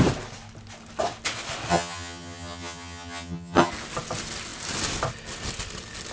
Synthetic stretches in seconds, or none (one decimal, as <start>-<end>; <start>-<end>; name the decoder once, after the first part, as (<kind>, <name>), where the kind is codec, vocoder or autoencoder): 1.7-3.7 (vocoder, HiFi-GAN)